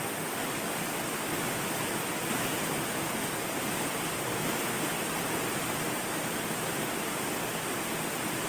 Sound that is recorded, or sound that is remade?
recorded